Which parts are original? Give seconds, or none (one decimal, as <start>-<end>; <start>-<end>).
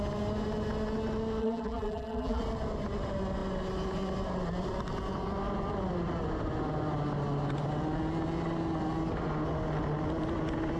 0.0-1.4; 2.4-10.8